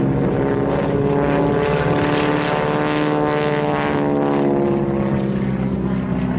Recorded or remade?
recorded